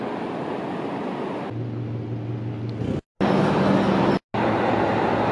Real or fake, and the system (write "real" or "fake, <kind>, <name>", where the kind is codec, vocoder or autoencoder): real